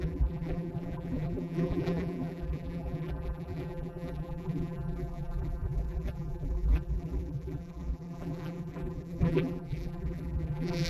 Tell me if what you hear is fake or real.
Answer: fake